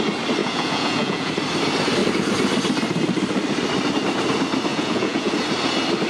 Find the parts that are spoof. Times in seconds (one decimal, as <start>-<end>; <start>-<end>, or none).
0.4-1.3; 4.7-5.3